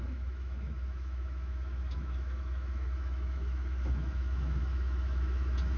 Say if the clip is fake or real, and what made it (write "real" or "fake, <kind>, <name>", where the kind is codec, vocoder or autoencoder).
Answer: fake, autoencoder, DAC-VAE